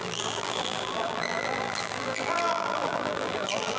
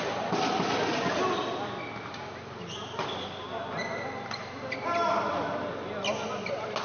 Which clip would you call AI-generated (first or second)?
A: first